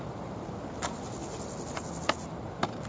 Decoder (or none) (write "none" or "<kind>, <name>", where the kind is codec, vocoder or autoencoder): none